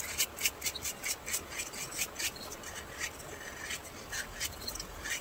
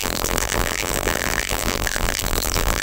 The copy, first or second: second